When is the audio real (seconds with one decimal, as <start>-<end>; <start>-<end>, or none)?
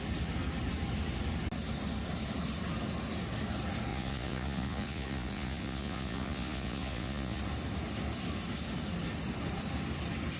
0.0-3.9; 7.4-10.4